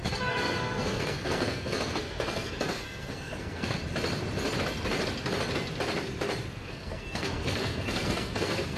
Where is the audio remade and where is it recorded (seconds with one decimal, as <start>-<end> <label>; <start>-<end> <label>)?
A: 0.0-3.8 remade; 3.8-6.5 recorded; 6.5-8.8 remade